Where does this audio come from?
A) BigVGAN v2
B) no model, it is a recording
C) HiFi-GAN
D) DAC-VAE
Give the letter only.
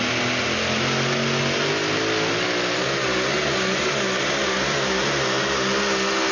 B